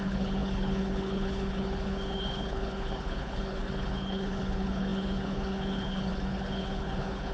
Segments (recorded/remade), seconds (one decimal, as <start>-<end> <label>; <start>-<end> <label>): 0.0-7.3 remade

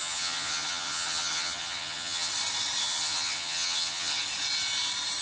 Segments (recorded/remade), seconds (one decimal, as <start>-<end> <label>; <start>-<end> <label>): 0.0-2.3 remade; 2.3-2.8 recorded; 2.8-4.2 remade; 4.2-5.2 recorded